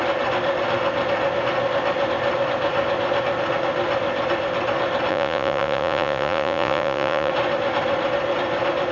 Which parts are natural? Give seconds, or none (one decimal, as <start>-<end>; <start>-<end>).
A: 0.0-5.1; 7.3-8.9

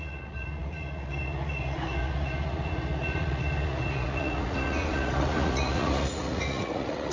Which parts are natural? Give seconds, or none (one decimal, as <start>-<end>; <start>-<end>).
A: none

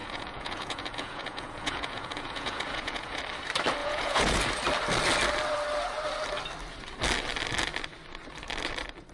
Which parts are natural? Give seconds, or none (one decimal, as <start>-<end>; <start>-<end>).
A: 3.2-3.8; 4.4-9.1